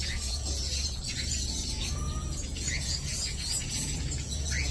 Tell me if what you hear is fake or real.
fake